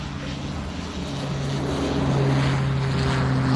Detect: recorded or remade recorded